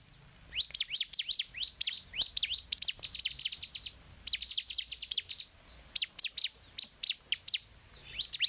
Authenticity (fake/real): real